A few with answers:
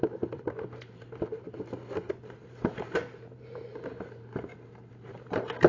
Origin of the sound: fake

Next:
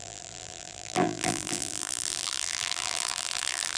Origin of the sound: fake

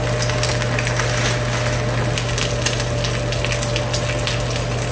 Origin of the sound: real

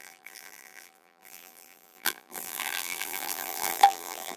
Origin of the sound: fake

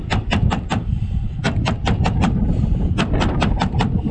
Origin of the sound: fake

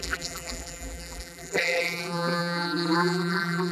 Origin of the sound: fake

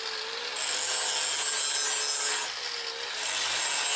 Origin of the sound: real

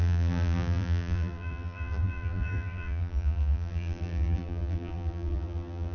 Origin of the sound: fake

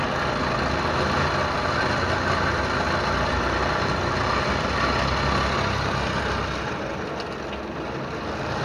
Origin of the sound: real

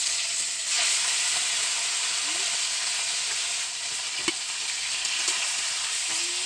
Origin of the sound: real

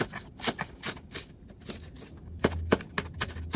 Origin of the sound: real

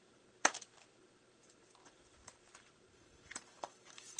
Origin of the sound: fake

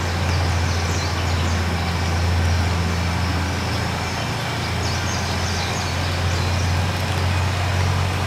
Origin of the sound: real